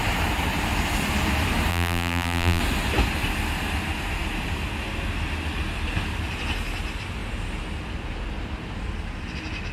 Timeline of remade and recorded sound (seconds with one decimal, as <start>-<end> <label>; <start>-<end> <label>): 0.0-1.7 recorded; 1.7-2.6 remade; 2.6-9.7 recorded